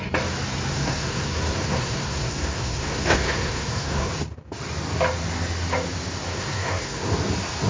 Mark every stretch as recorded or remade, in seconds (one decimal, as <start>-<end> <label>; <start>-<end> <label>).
0.0-0.7 recorded; 0.7-4.1 remade; 4.1-6.3 recorded; 6.3-7.1 remade; 7.1-7.7 recorded